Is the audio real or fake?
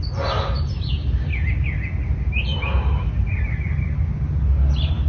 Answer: real